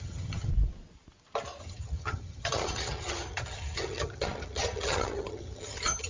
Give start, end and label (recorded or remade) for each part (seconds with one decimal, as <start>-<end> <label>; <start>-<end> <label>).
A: 0.0-0.5 remade; 0.5-1.6 recorded; 1.6-6.1 remade